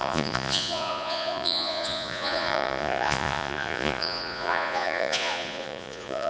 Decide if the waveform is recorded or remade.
remade